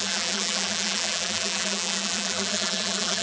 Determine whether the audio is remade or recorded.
remade